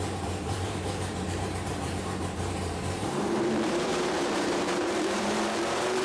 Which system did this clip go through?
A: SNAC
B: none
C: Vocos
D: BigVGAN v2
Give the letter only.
D